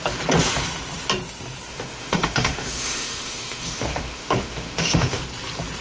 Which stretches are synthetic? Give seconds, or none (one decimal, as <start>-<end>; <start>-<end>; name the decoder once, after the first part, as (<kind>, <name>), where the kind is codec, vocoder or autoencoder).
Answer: 1.7-5.2 (autoencoder, DAC-VAE)